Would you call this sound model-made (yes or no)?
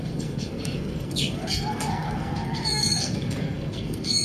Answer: yes